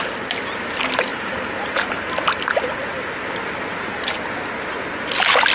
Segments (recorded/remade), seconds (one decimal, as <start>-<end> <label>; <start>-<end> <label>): 0.0-5.5 recorded